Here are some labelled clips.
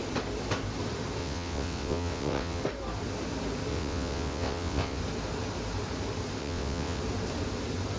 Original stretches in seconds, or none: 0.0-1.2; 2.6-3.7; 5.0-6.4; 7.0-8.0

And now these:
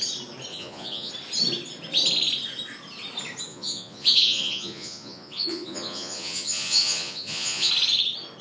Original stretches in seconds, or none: 0.0-0.5; 1.1-3.5; 7.7-8.4

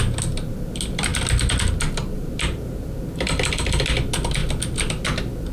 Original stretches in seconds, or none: 0.0-5.5